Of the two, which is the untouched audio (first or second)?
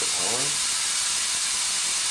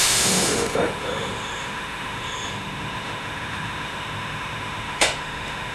first